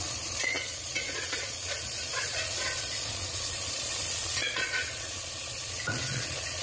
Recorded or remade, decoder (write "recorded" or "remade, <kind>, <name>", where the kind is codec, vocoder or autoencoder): remade, vocoder, Vocos